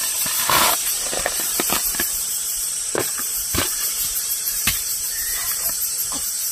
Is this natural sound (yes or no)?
no